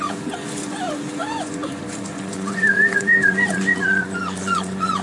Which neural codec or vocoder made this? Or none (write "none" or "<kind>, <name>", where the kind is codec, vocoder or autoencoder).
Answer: vocoder, Vocos